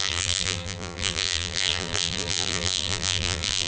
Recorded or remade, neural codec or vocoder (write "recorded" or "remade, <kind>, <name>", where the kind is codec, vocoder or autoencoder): remade, vocoder, BigVGAN v2